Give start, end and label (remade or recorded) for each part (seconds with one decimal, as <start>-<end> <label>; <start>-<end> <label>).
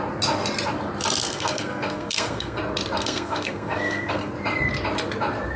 0.0-1.2 recorded; 1.2-2.6 remade; 2.6-3.0 recorded; 3.0-4.2 remade; 4.2-5.6 recorded